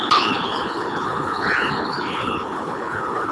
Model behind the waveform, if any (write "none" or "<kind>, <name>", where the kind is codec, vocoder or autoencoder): codec, HILCodec